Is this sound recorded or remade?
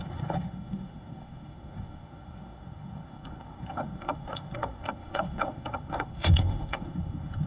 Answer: remade